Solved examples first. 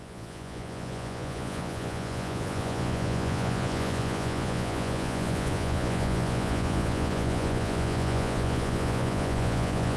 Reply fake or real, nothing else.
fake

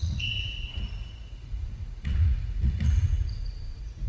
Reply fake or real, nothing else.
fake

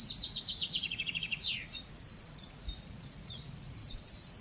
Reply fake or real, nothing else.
fake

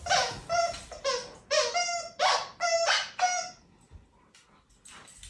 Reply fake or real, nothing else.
real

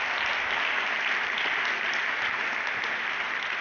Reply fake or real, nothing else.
real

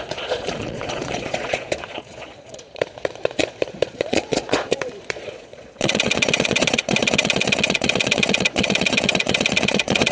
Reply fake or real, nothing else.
fake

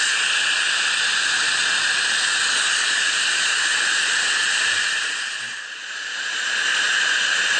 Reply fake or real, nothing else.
real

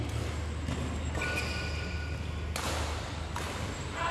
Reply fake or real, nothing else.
real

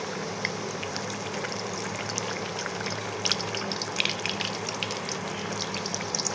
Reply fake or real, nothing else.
real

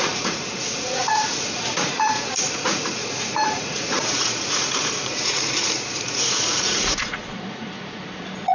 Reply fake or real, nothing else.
fake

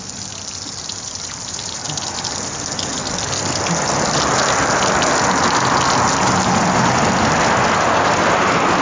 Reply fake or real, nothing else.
real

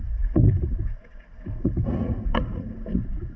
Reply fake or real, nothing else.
fake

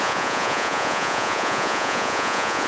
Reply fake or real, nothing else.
fake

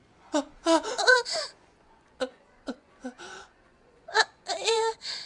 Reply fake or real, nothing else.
fake